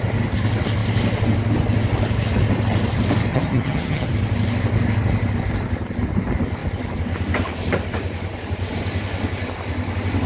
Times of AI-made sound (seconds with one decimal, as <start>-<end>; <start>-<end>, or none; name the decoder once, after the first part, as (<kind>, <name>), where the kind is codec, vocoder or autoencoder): 3.3-4.1 (vocoder, HiFi-GAN)